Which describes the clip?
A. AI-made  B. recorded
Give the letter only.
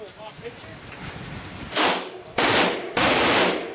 B